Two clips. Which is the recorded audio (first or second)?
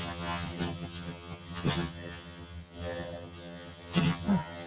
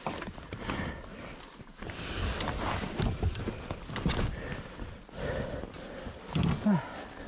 second